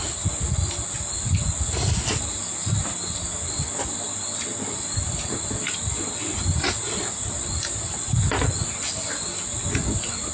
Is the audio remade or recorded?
recorded